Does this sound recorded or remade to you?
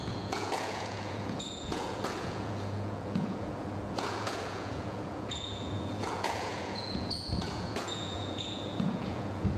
remade